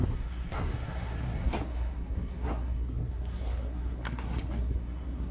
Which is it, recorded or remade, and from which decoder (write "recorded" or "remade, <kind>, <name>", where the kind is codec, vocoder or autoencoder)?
remade, codec, SNAC